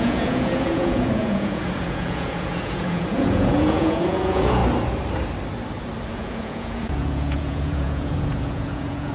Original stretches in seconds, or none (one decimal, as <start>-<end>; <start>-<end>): 4.6-6.1